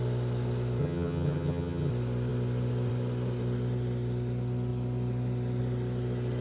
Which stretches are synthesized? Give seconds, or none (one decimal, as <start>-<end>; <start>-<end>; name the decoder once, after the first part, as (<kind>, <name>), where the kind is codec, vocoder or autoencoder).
0.8-1.9 (vocoder, HiFi-GAN)

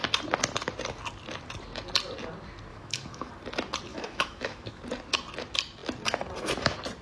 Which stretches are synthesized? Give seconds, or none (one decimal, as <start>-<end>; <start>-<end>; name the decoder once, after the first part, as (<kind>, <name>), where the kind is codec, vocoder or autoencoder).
2.7-3.3 (autoencoder, DAC-VAE); 3.9-4.8

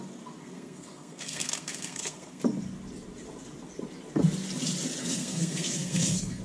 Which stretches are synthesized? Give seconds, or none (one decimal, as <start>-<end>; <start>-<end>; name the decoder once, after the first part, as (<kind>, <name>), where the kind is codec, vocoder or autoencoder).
0.4-2.4 (codec, SNAC); 5.0-6.4